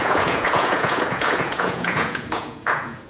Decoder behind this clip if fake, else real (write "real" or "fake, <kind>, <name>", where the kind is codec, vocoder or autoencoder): fake, vocoder, Vocos